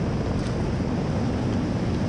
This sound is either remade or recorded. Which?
recorded